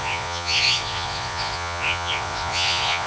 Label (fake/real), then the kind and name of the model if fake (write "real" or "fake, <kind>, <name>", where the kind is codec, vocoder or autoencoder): fake, vocoder, Vocos